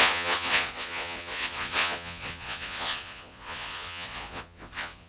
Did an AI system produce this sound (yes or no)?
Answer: yes